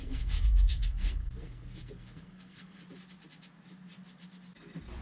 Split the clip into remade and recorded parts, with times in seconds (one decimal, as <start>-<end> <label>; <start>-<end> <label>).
0.0-2.8 remade; 2.8-5.0 recorded